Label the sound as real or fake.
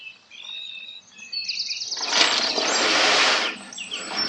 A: real